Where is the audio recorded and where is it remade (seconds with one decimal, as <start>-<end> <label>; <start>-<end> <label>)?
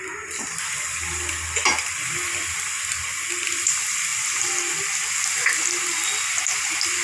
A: 0.0-7.0 recorded